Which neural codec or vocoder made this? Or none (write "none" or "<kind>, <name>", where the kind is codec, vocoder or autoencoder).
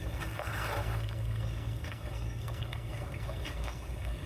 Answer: codec, SNAC